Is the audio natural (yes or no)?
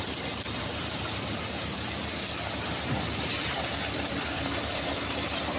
no